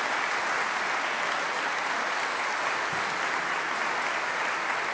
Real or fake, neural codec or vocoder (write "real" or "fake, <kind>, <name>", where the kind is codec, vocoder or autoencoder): real